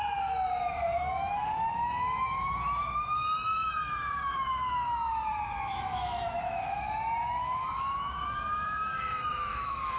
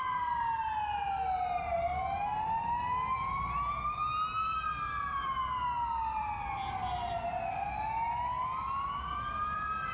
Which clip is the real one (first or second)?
second